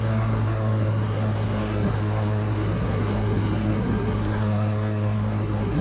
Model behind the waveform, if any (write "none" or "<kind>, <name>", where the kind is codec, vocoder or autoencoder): codec, SNAC